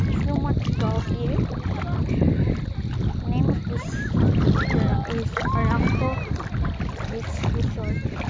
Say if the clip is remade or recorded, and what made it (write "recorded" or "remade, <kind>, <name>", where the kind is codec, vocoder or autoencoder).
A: recorded